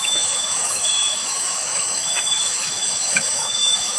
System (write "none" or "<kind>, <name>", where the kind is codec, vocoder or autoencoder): autoencoder, DAC-VAE